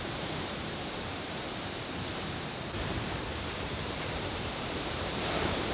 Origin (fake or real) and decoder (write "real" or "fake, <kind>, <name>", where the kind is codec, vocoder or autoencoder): fake, vocoder, BigVGAN v2